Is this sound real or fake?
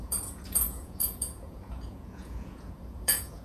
fake